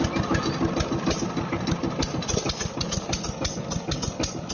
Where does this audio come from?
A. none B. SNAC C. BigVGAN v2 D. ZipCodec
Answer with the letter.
A